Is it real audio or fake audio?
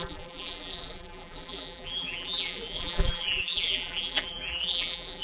fake